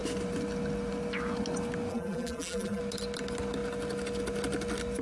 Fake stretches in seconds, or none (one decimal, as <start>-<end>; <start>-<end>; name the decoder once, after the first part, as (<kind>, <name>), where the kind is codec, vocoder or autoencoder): 1.9-2.8 (vocoder, BigVGAN v2)